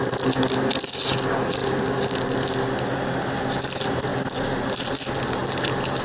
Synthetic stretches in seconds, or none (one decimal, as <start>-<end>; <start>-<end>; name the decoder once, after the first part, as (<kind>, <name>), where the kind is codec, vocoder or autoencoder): none